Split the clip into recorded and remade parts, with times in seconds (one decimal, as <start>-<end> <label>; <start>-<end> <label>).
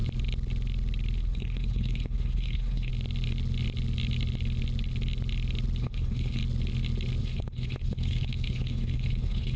0.0-1.2 recorded; 1.2-2.9 remade; 2.9-5.8 recorded; 5.8-6.4 remade; 6.4-7.2 recorded; 7.2-9.6 remade